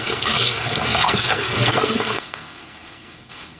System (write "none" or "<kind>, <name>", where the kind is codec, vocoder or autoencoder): codec, SNAC